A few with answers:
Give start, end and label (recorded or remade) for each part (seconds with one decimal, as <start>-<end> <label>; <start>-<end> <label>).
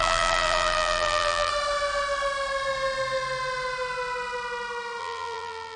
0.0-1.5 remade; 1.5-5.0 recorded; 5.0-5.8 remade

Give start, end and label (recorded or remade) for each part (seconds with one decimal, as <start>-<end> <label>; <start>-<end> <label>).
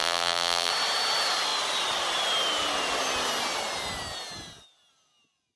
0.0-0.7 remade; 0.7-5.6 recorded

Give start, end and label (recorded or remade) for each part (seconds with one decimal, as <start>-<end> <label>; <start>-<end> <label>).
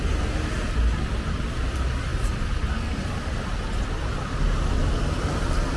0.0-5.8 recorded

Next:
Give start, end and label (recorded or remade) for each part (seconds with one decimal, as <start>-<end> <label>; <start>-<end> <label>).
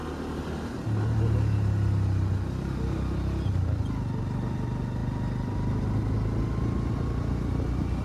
0.0-8.0 recorded